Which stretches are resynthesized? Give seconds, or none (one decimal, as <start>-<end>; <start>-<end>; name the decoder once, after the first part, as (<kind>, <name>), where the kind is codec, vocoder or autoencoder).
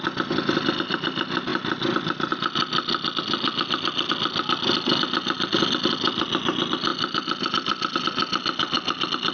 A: none